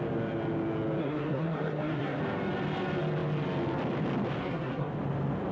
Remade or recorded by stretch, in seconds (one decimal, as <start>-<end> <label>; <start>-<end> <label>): 0.0-1.0 recorded; 1.0-2.2 remade; 2.2-4.4 recorded; 4.4-4.9 remade; 4.9-5.5 recorded